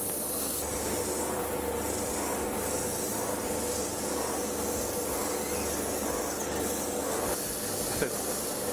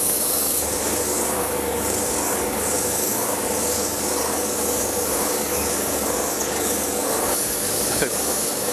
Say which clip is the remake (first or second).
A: second